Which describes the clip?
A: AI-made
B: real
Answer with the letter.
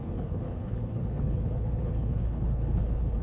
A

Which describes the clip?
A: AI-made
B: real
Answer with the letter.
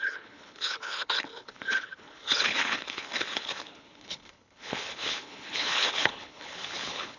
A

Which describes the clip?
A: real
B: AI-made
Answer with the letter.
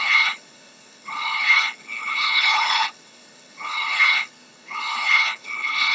B